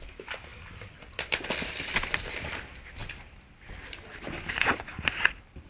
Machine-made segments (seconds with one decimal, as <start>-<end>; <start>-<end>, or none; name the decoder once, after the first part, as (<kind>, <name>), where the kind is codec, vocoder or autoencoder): 0.5-1.8 (vocoder, BigVGAN v2); 3.0-4.8